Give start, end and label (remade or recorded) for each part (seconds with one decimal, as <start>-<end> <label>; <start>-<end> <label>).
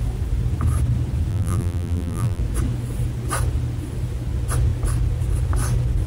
0.0-1.3 recorded; 1.3-2.4 remade; 2.4-6.1 recorded